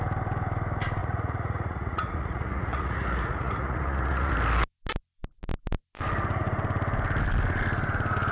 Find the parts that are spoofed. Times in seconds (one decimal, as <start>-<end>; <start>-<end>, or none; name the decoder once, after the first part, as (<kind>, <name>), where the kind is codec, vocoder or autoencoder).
1.0-4.3 (vocoder, Vocos)